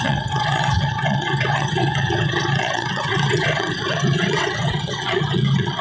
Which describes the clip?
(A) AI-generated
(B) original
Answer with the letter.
A